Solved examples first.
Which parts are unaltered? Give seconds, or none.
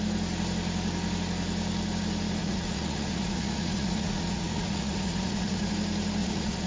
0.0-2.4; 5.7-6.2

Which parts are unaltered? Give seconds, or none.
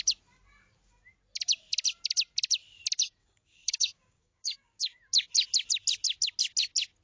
0.0-3.2; 5.0-7.0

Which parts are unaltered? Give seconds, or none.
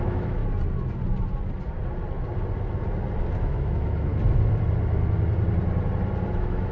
0.4-3.4; 4.1-6.3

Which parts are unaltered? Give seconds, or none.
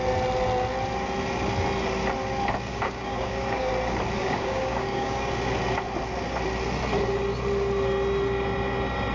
0.0-2.7; 3.7-4.2; 5.3-9.1